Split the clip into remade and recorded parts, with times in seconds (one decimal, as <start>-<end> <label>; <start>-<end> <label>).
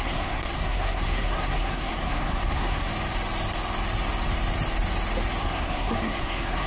0.0-2.9 remade; 2.9-5.4 recorded; 5.4-6.7 remade